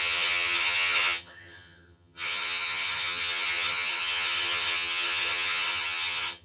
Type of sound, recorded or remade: remade